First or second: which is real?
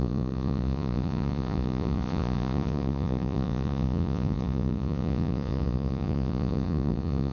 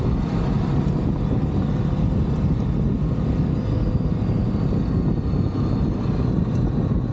second